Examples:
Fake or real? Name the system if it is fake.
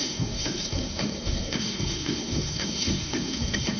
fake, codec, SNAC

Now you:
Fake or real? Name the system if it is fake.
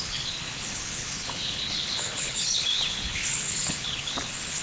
fake, codec, HILCodec